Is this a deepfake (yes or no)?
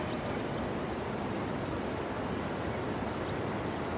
no